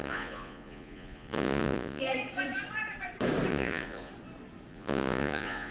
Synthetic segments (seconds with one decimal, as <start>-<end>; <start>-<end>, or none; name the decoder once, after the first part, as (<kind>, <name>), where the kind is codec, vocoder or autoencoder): 0.0-2.0 (vocoder, Vocos); 3.5-4.1; 4.7-5.7